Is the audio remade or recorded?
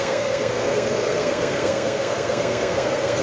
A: remade